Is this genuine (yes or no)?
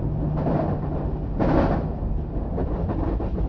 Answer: yes